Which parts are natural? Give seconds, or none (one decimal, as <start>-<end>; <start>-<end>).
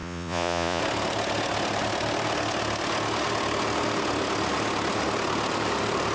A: 0.8-6.1